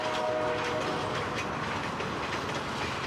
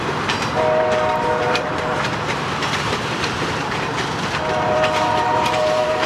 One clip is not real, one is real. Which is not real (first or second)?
second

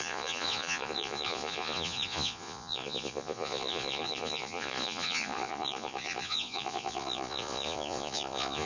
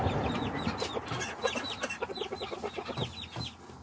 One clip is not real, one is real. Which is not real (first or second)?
first